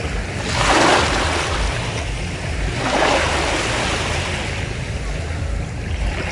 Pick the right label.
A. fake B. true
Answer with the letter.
B